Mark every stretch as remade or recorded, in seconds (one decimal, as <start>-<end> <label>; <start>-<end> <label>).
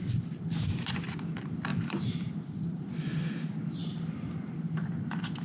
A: 0.0-1.7 recorded; 1.7-2.3 remade; 2.3-5.4 recorded